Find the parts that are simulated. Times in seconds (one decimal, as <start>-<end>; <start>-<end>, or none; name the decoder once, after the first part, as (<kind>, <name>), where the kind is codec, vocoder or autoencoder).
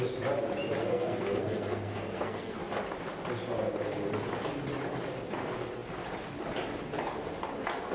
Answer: 0.8-2.6 (codec, SNAC)